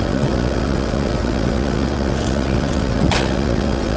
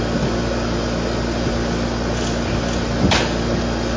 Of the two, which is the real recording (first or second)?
second